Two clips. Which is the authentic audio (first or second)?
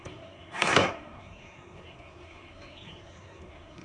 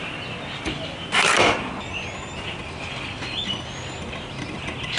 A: second